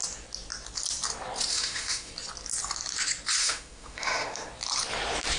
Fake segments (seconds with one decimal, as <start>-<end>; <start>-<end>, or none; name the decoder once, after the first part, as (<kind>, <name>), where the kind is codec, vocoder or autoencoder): 1.5-2.1 (autoencoder, DAC-VAE); 3.4-4.5